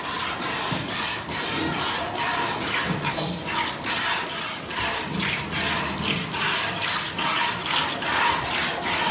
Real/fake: real